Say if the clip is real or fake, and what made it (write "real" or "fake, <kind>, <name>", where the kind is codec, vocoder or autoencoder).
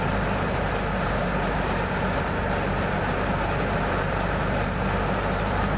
fake, vocoder, BigVGAN v2